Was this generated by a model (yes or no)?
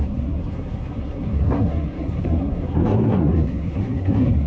yes